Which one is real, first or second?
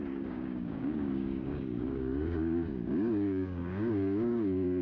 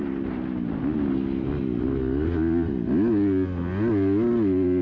second